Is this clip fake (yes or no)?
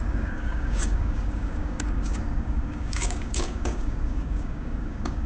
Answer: yes